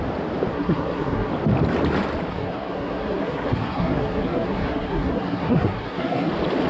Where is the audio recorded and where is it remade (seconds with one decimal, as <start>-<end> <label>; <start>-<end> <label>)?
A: 0.0-0.5 recorded; 0.5-1.3 remade; 1.3-2.3 recorded; 2.3-6.3 remade; 6.3-6.7 recorded